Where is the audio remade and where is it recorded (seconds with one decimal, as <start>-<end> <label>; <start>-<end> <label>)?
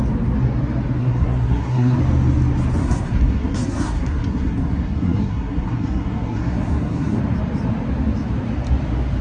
0.0-1.0 recorded; 1.0-2.0 remade; 2.0-2.8 recorded; 2.8-7.2 remade; 7.2-9.2 recorded